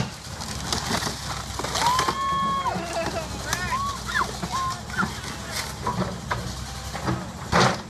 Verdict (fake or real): real